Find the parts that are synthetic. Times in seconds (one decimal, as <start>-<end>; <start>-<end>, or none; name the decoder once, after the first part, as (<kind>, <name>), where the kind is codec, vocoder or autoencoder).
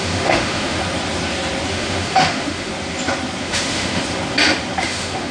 0.0-0.8 (autoencoder, DAC-VAE); 1.7-2.7; 3.4-4.0; 4.8-5.3